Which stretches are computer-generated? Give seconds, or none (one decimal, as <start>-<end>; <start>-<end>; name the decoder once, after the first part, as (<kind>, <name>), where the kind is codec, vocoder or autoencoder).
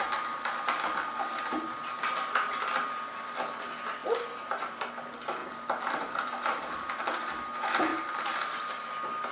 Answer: 4.0-4.9 (vocoder, BigVGAN v2); 5.4-7.0; 7.9-8.9